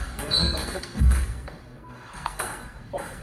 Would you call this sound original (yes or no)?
no